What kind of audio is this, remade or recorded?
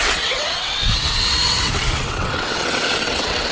remade